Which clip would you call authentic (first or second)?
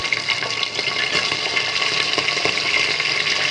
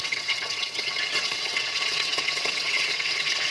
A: first